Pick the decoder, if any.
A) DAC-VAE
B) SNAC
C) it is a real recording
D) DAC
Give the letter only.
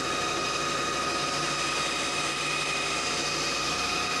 C